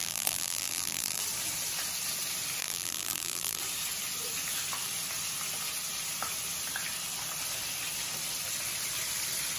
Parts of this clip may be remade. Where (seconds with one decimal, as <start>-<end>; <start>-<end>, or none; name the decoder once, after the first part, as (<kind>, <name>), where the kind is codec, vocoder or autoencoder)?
0.0-1.2 (vocoder, BigVGAN v2); 2.6-3.6